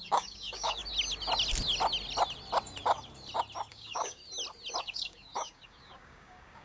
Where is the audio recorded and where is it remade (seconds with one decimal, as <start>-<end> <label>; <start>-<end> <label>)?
0.0-0.8 remade; 0.8-3.7 recorded; 3.7-4.2 remade; 4.2-4.8 recorded; 4.8-6.6 remade